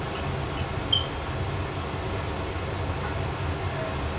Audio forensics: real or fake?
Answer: real